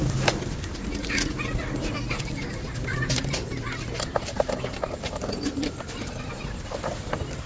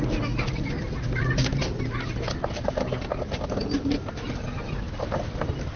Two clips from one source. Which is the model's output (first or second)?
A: first